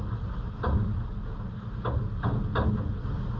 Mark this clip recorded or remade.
recorded